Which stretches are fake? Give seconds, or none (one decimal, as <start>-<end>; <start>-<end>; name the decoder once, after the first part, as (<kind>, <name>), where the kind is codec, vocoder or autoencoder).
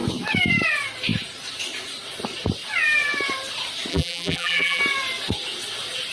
3.9-4.8 (vocoder, BigVGAN v2)